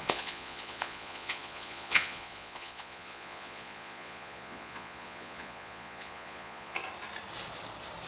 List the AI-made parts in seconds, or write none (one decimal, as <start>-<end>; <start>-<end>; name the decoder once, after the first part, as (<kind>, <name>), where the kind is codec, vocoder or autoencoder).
0.0-6.8 (vocoder, Vocos)